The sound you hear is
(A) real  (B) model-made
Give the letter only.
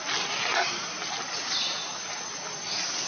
A